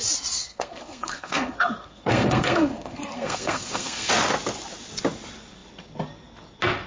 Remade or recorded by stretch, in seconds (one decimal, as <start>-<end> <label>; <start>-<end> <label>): 0.0-0.5 recorded; 0.5-4.1 remade; 4.1-6.9 recorded